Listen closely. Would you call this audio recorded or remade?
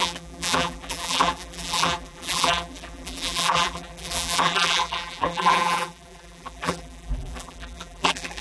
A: remade